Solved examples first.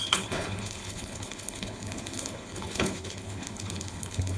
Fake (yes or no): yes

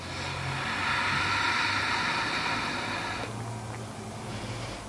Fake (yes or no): no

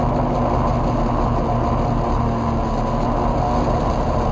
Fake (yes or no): no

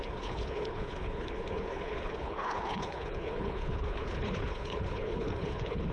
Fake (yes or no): yes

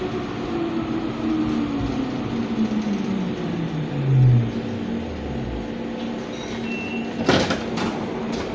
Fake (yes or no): no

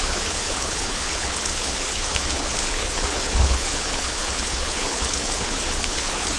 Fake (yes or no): yes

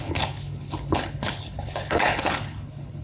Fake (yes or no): yes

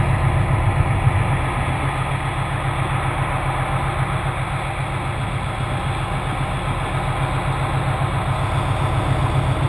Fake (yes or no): no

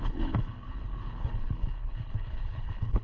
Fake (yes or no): yes